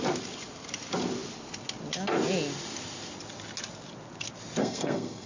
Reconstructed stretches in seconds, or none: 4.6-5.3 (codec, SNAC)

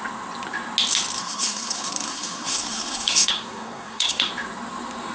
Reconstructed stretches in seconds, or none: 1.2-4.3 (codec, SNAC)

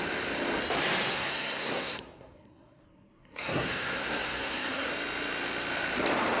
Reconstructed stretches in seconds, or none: 1.1-4.9 (codec, SNAC)